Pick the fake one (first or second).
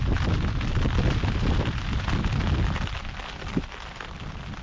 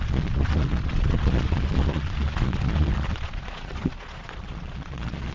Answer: second